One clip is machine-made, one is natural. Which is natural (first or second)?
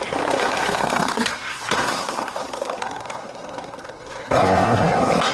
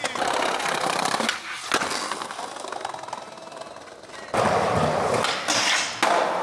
second